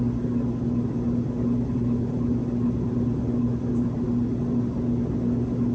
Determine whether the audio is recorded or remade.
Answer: recorded